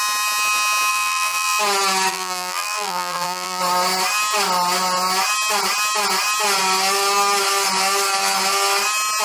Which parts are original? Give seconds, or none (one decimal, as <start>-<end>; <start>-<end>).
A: 0.0-0.9; 1.6-2.1; 3.6-9.2